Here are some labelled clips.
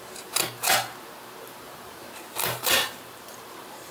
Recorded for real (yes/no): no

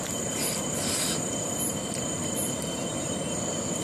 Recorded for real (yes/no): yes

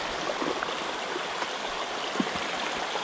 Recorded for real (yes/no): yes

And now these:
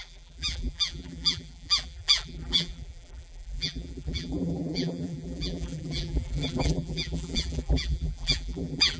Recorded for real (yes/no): no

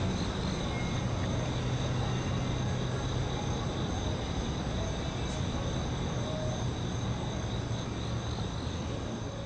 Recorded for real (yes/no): yes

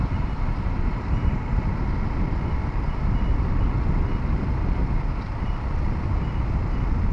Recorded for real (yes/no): yes